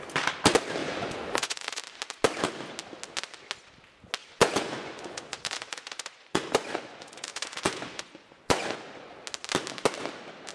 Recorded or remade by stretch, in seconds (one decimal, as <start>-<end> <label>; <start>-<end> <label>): 0.0-0.8 recorded; 0.8-1.8 remade; 1.8-4.2 recorded; 4.2-9.1 remade; 9.1-10.5 recorded

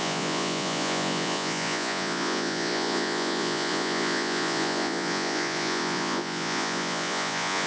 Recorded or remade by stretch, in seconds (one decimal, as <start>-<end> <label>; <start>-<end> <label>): 0.0-7.7 remade

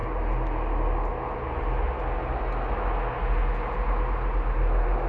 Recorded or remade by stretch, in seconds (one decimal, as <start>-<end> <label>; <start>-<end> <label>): 0.0-5.1 recorded

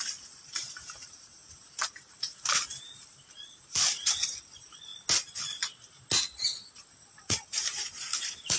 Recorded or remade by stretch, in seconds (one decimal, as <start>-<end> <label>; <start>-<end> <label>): 0.0-1.4 remade; 1.4-2.1 recorded; 2.1-4.9 remade; 4.9-7.1 recorded; 7.1-8.6 remade

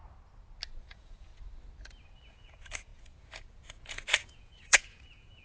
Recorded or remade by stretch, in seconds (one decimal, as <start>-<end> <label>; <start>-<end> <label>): 0.0-0.8 recorded; 0.8-1.3 remade; 1.3-2.3 recorded; 2.3-5.4 remade

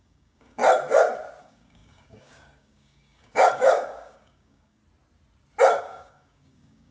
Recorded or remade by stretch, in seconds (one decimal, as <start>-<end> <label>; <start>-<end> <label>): 0.0-0.6 remade; 0.6-1.4 recorded; 1.4-4.8 remade; 4.8-5.8 recorded; 5.8-6.9 remade

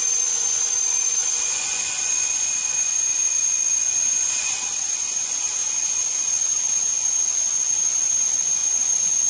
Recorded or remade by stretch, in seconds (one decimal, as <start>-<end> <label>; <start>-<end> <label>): 0.0-9.3 remade